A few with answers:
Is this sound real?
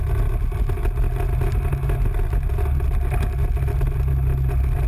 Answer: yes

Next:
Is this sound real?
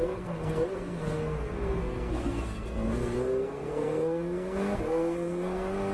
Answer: no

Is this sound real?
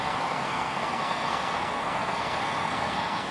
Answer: no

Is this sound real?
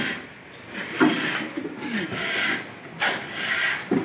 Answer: yes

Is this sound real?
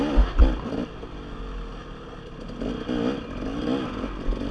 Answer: yes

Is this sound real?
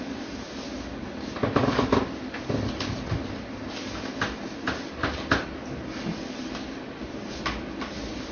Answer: yes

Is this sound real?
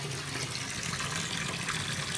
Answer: yes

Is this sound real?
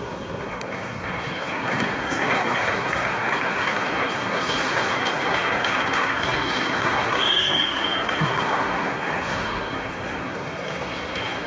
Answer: no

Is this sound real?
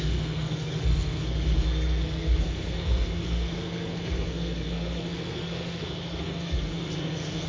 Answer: no